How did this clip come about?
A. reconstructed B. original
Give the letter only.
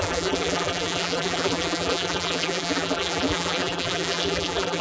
A